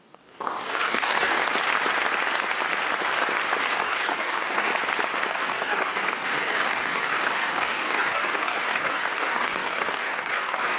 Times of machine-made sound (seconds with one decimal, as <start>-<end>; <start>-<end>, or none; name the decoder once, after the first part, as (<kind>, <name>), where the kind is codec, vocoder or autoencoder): 0.0-1.4 (codec, DAC); 3.6-4.7; 5.3-10.8